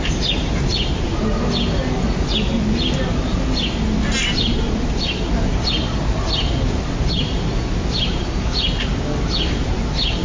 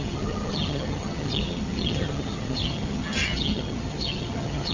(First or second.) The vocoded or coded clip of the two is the second